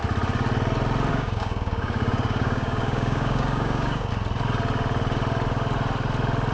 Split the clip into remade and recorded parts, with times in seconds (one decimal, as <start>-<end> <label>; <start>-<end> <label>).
0.0-1.1 recorded; 1.1-4.1 remade; 4.1-6.5 recorded